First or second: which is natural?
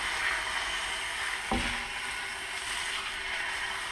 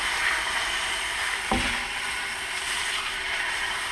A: first